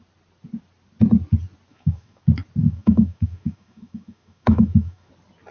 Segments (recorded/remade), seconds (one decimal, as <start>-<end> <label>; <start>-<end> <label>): 0.0-1.7 recorded; 1.7-2.2 remade; 2.2-2.6 recorded; 2.6-5.1 remade; 5.1-5.5 recorded